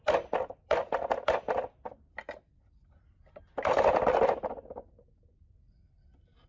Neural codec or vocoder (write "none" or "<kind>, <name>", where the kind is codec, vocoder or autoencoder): none